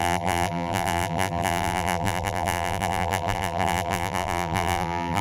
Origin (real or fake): fake